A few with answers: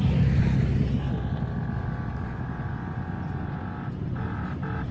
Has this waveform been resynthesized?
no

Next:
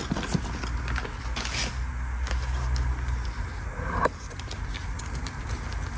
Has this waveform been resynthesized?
no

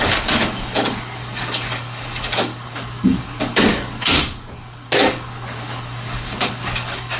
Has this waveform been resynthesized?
yes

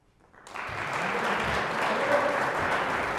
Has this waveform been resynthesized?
yes